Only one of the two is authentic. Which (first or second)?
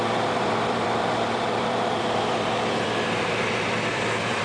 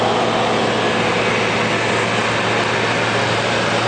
second